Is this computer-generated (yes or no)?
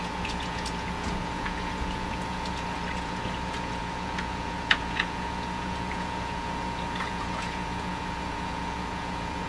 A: yes